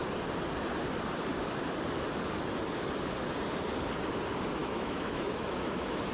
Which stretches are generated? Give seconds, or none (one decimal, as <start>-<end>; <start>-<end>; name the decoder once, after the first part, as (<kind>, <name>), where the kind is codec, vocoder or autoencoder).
4.6-6.1 (autoencoder, DAC-VAE)